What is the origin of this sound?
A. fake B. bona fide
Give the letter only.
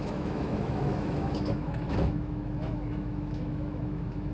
A